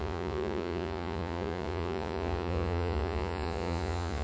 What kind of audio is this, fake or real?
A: fake